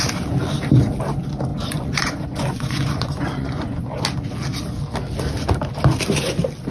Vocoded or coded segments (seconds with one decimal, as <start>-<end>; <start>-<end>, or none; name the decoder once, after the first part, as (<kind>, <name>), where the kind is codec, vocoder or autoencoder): 1.5-3.9 (vocoder, Vocos)